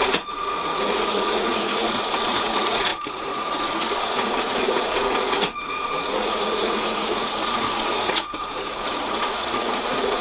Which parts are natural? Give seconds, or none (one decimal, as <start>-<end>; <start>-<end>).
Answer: none